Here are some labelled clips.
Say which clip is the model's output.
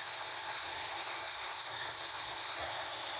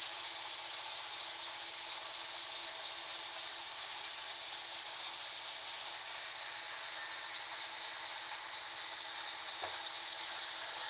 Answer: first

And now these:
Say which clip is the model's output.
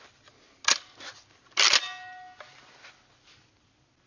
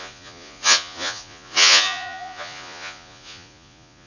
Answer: second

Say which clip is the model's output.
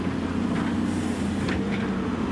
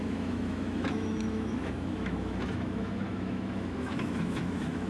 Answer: second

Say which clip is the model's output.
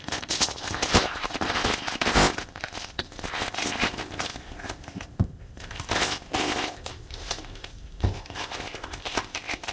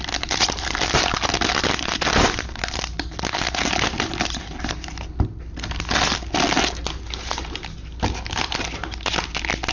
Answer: first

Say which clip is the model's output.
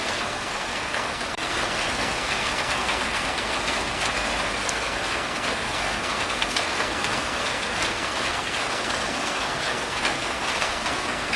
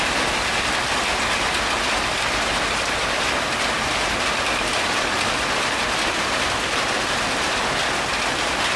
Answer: first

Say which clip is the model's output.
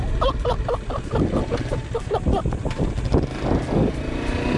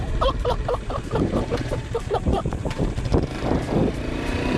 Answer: second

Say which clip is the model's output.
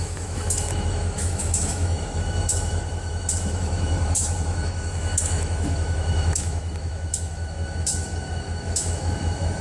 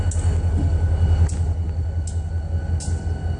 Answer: first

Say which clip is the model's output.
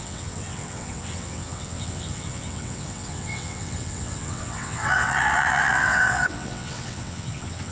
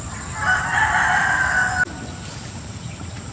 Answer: first